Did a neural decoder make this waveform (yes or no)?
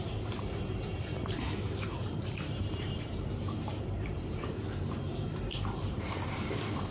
yes